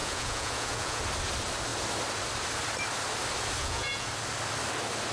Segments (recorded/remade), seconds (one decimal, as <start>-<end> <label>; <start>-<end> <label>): 0.0-1.0 remade; 1.0-3.6 recorded; 3.6-4.1 remade; 4.1-5.1 recorded